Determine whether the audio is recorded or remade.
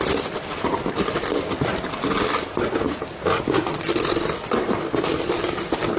recorded